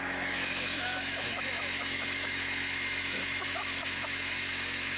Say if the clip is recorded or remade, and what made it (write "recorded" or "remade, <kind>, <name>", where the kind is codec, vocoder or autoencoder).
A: remade, autoencoder, DAC-VAE